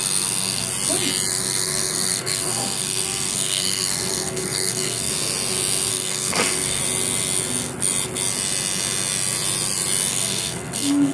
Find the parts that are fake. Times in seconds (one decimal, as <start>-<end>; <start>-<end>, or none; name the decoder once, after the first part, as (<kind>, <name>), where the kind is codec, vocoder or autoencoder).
0.0-0.7 (codec, SNAC); 1.3-5.1; 5.9-6.8; 10.1-11.1